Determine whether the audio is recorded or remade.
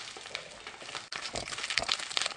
recorded